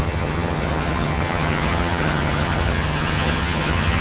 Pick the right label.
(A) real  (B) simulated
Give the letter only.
B